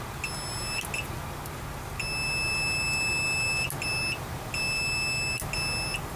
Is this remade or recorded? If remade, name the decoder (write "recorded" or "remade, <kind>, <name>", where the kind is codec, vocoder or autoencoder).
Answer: recorded